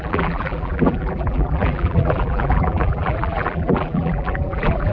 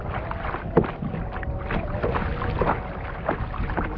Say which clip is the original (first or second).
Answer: second